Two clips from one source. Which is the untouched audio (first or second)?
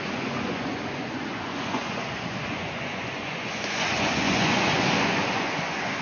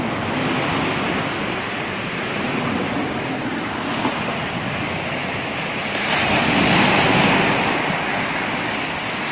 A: second